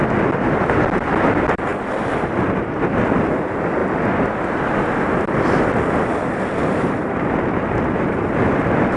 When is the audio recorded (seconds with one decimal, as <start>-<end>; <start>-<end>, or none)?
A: 0.0-9.0